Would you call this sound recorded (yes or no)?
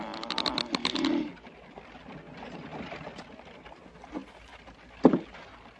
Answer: yes